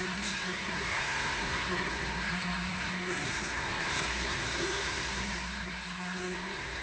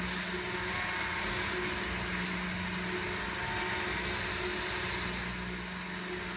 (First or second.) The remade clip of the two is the first